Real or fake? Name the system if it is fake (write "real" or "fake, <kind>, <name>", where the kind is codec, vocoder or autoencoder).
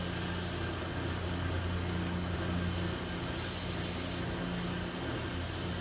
real